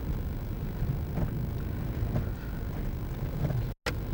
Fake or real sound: real